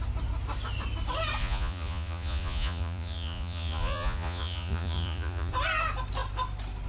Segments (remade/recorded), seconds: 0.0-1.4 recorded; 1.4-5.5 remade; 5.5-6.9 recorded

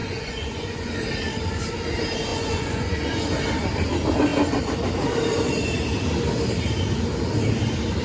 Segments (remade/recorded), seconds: 0.0-0.9 remade; 0.9-2.3 recorded; 2.3-3.2 remade; 3.2-8.0 recorded

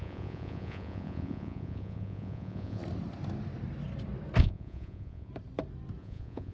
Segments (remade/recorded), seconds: 0.0-2.8 remade; 2.8-4.4 recorded; 4.4-5.3 remade; 5.3-6.0 recorded; 6.0-6.5 remade

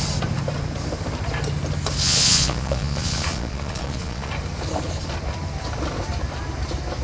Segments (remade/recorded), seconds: 0.0-2.0 recorded; 2.0-4.3 remade; 4.3-7.0 recorded

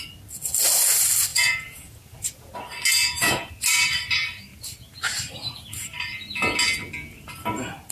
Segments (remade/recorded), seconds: 0.0-1.3 recorded; 1.3-2.5 remade; 2.5-3.0 recorded; 3.0-3.5 remade; 3.5-7.9 recorded

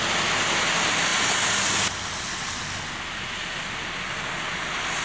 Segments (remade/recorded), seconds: 0.0-5.0 recorded

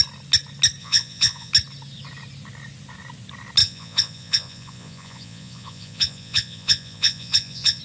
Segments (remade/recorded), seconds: 0.0-0.8 recorded; 0.8-1.5 remade; 1.5-3.6 recorded; 3.6-7.8 remade